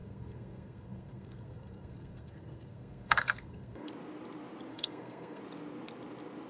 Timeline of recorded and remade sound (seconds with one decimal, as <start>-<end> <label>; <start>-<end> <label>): 0.0-3.9 remade; 3.9-4.7 recorded; 4.7-5.4 remade; 5.4-6.5 recorded